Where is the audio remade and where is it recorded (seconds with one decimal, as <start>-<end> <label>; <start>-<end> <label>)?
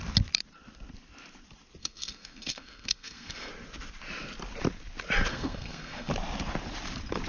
0.0-1.8 recorded; 1.8-3.5 remade; 3.5-5.3 recorded; 5.3-6.1 remade; 6.1-7.3 recorded